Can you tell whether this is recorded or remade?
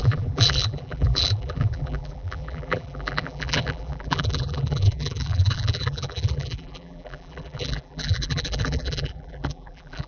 remade